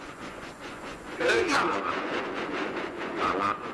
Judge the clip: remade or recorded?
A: remade